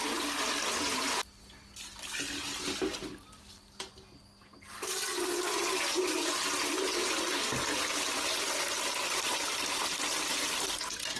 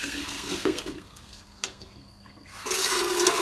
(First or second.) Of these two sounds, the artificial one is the second